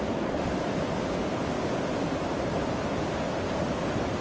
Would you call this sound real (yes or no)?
yes